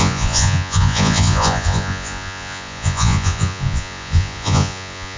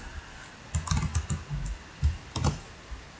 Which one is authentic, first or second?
second